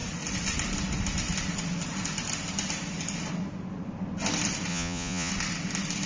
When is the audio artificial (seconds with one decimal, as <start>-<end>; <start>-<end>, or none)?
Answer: 4.7-5.3